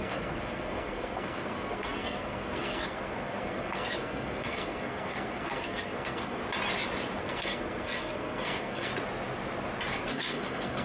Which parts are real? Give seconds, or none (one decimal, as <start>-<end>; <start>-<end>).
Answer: 6.4-7.2; 8.9-9.9